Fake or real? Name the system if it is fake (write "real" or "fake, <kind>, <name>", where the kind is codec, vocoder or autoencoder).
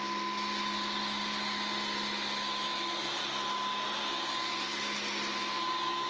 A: real